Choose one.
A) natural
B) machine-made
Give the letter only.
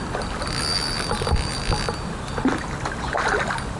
A